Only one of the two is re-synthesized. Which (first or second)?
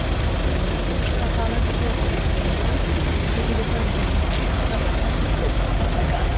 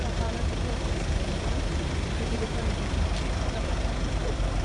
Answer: second